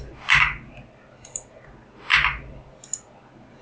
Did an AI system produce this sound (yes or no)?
no